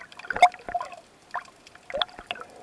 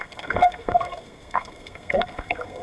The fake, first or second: second